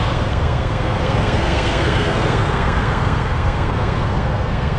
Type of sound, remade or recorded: remade